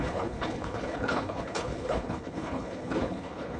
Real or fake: fake